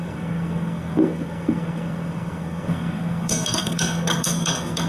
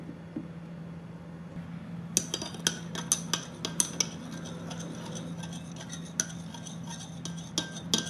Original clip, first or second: second